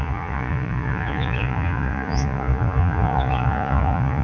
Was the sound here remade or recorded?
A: remade